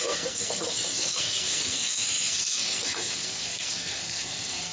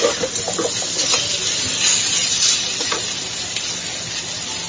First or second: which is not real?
first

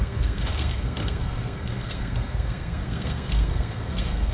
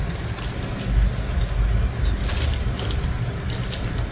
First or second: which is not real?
first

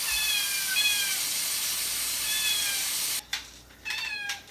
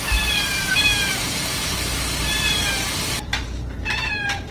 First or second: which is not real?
second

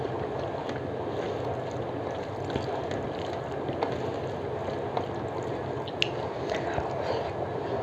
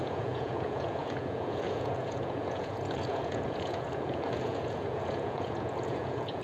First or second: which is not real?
second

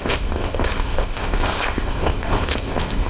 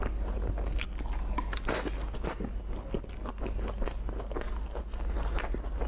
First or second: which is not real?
first